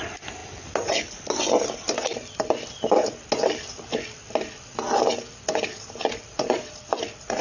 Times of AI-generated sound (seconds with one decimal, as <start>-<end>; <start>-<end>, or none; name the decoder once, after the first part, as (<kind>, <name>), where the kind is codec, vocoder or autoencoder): none